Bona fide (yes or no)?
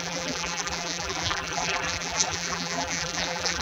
no